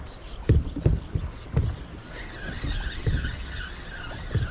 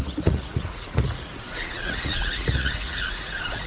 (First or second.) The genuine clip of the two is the first